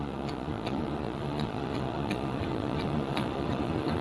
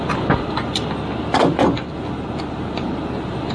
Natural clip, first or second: second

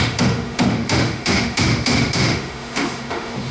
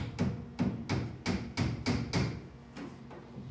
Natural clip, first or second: second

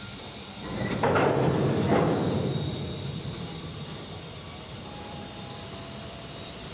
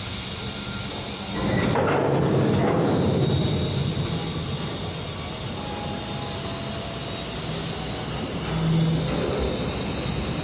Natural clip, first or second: second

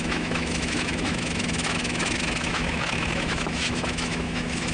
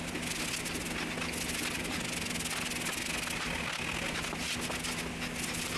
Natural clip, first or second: second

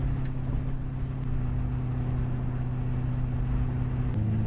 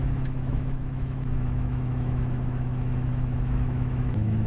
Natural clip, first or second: first